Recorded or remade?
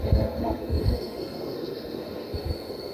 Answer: remade